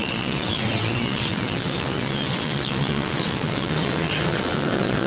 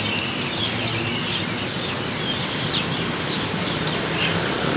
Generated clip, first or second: first